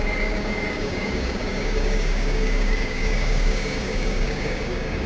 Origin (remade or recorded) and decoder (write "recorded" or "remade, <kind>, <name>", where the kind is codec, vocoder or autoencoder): remade, codec, DAC